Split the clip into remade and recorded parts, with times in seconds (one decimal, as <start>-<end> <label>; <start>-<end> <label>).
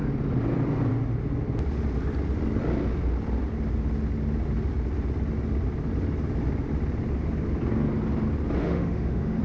0.0-8.6 recorded; 8.6-9.4 remade